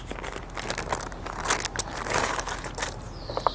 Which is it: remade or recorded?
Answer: recorded